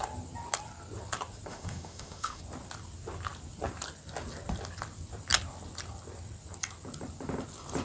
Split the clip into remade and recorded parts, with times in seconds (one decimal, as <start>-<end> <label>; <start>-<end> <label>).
0.0-1.5 recorded; 1.5-2.4 remade; 2.4-7.8 recorded